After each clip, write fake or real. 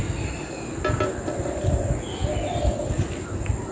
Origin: real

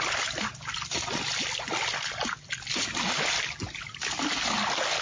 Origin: real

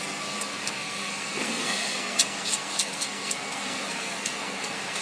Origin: fake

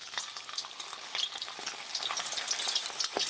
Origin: real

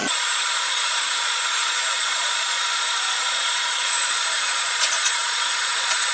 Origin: fake